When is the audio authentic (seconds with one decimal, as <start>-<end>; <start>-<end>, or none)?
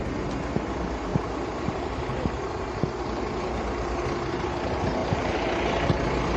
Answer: 0.0-1.1; 2.8-5.0; 5.5-6.4